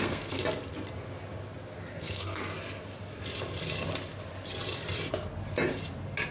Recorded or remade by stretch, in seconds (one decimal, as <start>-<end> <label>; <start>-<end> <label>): 0.0-0.4 remade; 0.4-1.9 recorded; 1.9-2.4 remade; 2.4-6.3 recorded